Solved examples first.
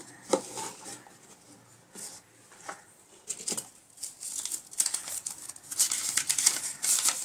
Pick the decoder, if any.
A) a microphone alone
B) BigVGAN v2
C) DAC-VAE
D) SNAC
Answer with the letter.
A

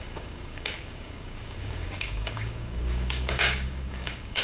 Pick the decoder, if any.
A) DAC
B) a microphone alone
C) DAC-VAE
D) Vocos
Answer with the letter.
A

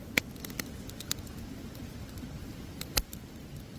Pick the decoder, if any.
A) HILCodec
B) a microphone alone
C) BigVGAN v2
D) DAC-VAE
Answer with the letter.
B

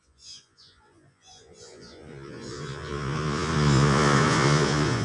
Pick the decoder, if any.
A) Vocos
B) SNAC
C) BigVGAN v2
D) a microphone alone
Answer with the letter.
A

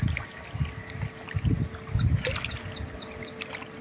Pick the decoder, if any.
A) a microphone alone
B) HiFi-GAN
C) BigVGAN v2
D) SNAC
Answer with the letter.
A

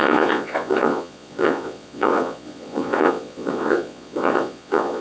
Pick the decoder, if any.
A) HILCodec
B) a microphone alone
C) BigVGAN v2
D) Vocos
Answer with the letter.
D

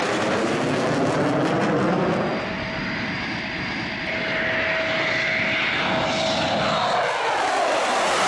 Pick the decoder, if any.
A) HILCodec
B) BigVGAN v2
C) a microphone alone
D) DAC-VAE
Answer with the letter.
C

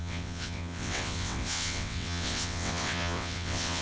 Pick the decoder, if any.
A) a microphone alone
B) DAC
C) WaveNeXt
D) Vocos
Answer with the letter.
C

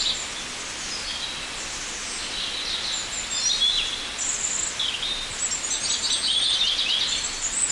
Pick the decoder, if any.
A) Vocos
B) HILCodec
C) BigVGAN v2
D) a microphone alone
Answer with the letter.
D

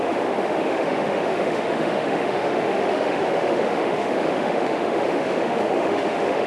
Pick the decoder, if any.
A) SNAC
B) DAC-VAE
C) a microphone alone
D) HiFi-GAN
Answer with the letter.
B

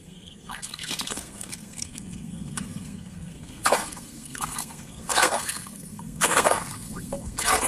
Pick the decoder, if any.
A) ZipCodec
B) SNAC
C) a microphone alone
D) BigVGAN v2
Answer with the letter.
B